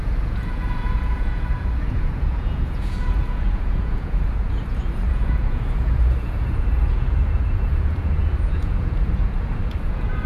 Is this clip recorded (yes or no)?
no